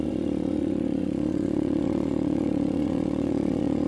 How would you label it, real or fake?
fake